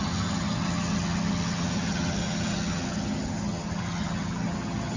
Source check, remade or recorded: remade